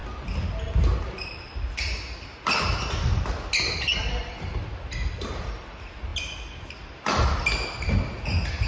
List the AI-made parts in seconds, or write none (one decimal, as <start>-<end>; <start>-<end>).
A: none